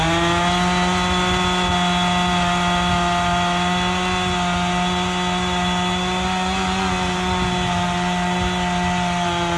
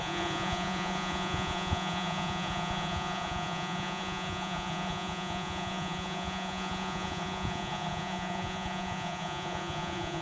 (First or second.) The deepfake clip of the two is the second